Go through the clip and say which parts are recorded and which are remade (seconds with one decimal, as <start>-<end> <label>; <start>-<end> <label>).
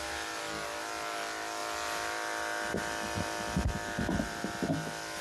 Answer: 0.0-1.6 recorded; 1.6-4.7 remade; 4.7-5.2 recorded